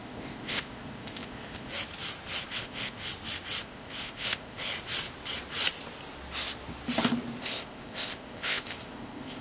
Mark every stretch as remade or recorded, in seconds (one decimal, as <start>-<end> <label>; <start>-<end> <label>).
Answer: 0.0-1.7 remade; 1.7-2.5 recorded; 2.5-3.0 remade; 3.0-3.6 recorded; 3.6-4.7 remade; 4.7-7.4 recorded; 7.4-9.4 remade